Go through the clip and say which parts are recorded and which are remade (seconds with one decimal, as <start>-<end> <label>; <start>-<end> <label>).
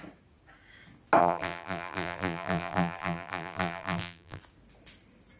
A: 0.0-1.2 recorded; 1.2-4.4 remade; 4.4-5.4 recorded